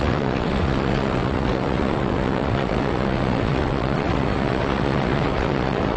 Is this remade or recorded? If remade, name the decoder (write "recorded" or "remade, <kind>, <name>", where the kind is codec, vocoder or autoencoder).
remade, vocoder, WaveNeXt